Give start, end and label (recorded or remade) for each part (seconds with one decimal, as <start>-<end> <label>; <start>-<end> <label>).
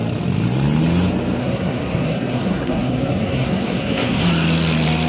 0.0-1.4 recorded; 1.4-4.3 remade; 4.3-5.1 recorded